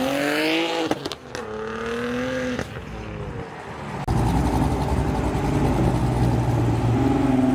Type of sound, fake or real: real